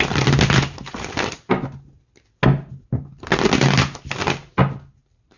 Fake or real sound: real